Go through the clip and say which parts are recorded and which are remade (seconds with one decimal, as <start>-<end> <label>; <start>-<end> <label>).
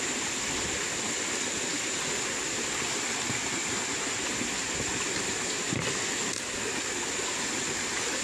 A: 0.0-8.2 recorded